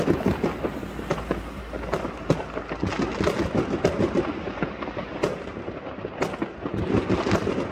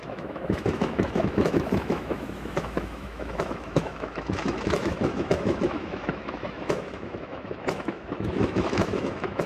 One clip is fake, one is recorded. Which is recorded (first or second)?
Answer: first